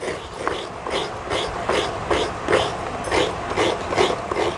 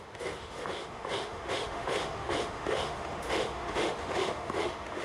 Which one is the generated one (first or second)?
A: second